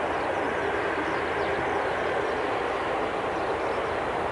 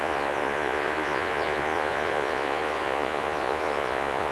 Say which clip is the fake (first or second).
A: second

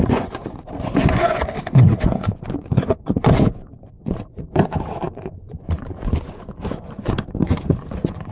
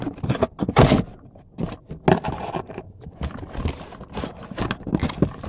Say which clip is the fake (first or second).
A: first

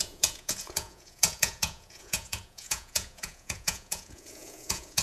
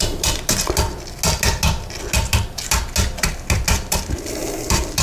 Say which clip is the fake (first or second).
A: first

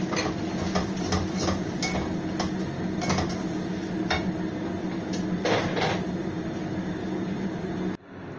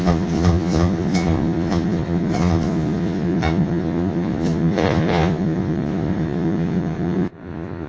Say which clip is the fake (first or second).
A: second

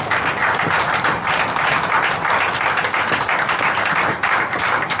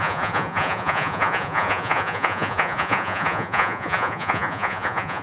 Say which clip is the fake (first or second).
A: second